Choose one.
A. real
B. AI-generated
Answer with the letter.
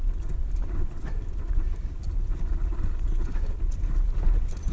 A